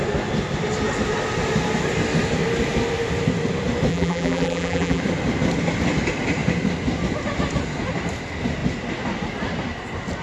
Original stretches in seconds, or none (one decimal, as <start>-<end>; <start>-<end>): 0.0-3.9; 5.0-10.2